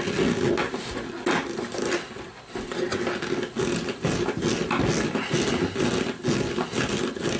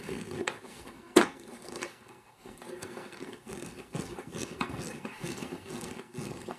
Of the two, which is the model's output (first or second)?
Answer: second